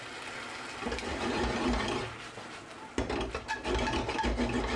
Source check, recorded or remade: recorded